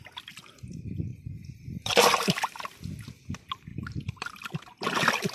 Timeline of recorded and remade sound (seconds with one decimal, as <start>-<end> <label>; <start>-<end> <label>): 0.0-1.1 recorded; 1.1-2.4 remade; 2.4-3.7 recorded; 3.7-4.5 remade; 4.5-5.3 recorded